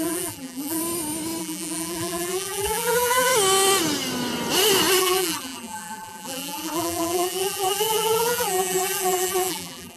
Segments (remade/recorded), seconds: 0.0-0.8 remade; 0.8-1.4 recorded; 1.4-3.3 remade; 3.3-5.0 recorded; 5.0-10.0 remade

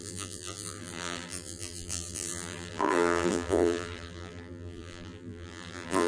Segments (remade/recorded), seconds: 0.0-6.1 remade